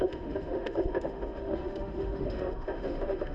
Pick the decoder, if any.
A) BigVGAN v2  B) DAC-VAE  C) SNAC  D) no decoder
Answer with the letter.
B